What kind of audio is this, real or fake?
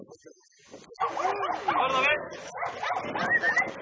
real